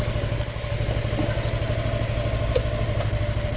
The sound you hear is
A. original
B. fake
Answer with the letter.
A